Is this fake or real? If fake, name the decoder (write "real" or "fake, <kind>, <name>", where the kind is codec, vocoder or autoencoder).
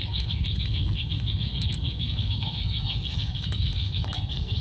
fake, codec, SNAC